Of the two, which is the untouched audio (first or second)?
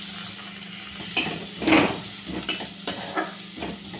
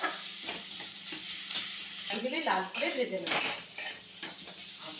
first